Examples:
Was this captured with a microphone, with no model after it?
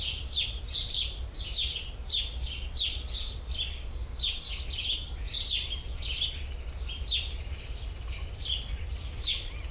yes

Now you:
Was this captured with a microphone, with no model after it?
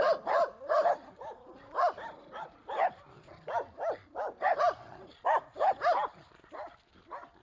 yes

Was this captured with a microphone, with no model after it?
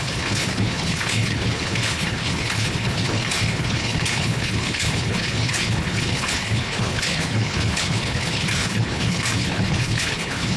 no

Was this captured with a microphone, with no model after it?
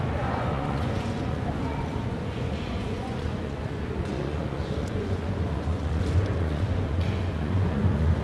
no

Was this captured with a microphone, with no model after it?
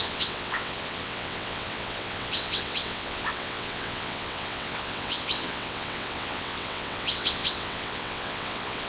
no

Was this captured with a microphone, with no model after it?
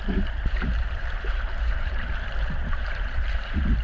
no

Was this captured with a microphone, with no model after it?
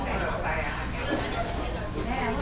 yes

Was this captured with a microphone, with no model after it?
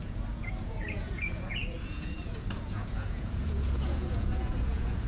no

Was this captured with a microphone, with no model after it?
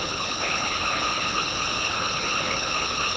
no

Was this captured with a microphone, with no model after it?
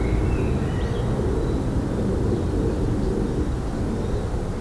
yes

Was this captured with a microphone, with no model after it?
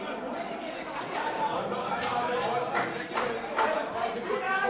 yes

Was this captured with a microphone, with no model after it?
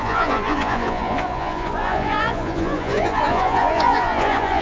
no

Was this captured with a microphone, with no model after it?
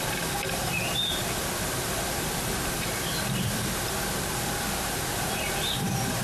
no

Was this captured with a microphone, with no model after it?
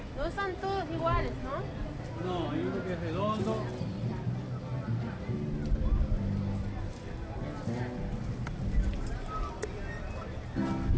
yes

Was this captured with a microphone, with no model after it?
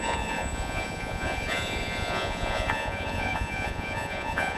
no